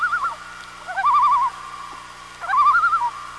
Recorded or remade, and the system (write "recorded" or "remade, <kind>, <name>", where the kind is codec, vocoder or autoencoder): recorded